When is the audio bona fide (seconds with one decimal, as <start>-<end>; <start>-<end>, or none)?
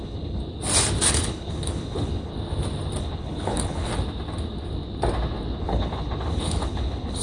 0.4-1.1; 2.3-3.0; 3.9-5.6